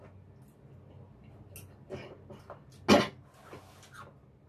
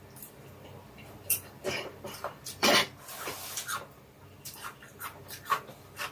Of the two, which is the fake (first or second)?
second